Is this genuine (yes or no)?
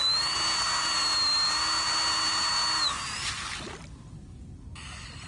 yes